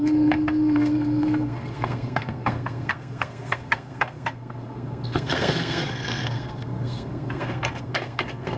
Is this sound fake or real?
fake